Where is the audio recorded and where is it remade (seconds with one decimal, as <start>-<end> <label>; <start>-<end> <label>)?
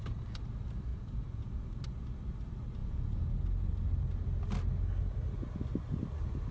0.0-0.9 recorded; 0.9-1.5 remade; 1.5-2.8 recorded; 2.8-3.7 remade; 3.7-6.5 recorded